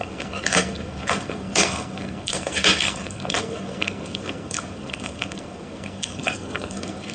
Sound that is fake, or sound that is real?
fake